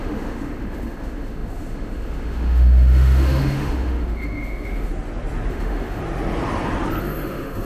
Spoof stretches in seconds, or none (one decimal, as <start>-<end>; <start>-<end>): 0.0-4.9; 5.5-6.0; 7.0-7.7